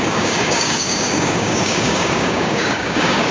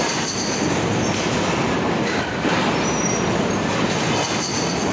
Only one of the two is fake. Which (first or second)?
first